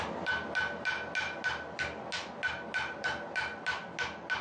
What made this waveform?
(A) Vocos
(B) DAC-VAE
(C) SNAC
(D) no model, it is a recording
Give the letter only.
D